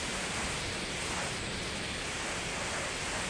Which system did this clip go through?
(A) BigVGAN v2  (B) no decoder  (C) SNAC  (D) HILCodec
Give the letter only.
B